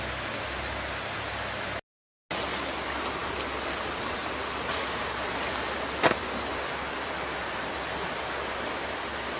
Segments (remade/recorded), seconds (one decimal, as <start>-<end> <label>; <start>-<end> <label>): 0.0-9.4 recorded